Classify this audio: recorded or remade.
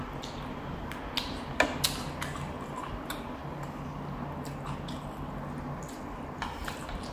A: recorded